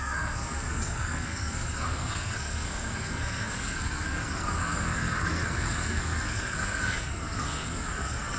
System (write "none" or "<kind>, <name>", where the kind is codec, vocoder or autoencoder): codec, SNAC